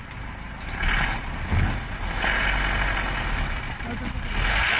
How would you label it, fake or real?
real